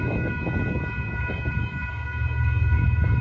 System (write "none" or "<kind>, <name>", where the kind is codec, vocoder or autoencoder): codec, DAC